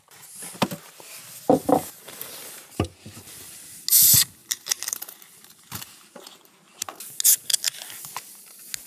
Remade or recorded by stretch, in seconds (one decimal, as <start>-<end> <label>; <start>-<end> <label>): 0.0-1.8 recorded; 1.8-3.5 remade; 3.5-4.4 recorded; 4.4-6.5 remade; 6.5-8.9 recorded